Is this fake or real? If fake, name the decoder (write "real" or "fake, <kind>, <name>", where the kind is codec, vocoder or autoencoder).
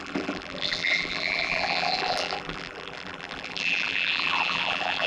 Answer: fake, vocoder, BigVGAN v2